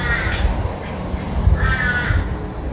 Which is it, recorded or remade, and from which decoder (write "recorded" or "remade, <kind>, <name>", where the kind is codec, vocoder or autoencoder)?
recorded